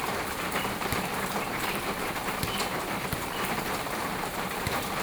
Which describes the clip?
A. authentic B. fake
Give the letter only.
B